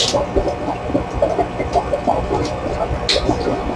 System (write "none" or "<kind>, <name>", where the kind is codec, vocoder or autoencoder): none